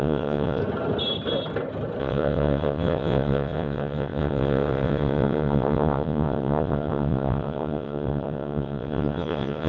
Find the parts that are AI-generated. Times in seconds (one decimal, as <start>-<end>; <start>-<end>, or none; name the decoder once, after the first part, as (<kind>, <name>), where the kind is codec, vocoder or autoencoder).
0.0-0.6 (vocoder, WaveNeXt); 2.0-9.7